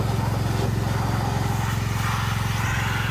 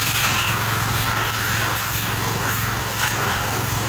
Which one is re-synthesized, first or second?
second